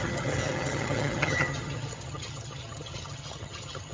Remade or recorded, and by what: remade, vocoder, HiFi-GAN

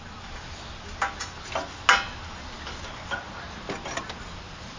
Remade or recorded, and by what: recorded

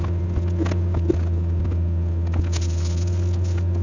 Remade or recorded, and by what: recorded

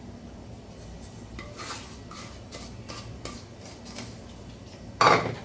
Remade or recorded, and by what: recorded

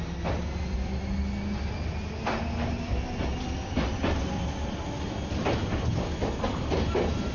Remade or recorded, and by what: recorded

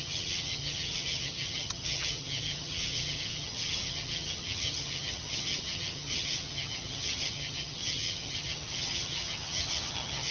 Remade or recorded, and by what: remade, vocoder, HiFi-GAN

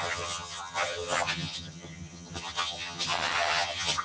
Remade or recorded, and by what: remade, vocoder, HiFi-GAN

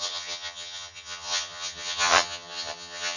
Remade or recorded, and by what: remade, vocoder, HiFi-GAN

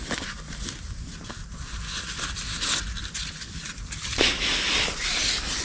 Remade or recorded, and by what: recorded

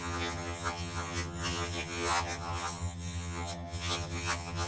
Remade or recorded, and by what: remade, vocoder, HiFi-GAN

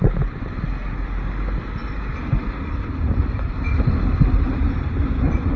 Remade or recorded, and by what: recorded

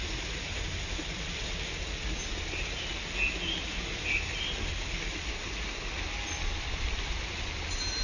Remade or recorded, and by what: recorded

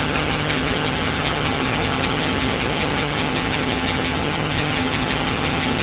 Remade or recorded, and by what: remade, vocoder, HiFi-GAN